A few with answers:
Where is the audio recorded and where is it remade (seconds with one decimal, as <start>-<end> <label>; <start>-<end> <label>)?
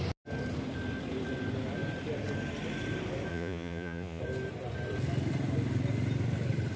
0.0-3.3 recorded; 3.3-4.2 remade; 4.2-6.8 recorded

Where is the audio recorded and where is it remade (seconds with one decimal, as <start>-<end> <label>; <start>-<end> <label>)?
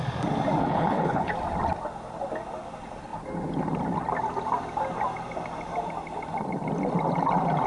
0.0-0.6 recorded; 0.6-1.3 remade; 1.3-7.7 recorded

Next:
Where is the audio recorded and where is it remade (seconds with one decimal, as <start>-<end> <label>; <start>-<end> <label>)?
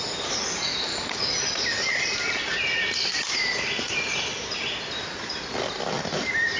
0.0-6.6 recorded